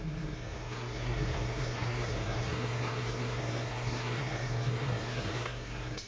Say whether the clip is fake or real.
fake